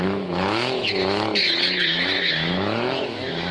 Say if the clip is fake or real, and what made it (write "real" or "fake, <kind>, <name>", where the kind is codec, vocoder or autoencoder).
fake, autoencoder, DAC-VAE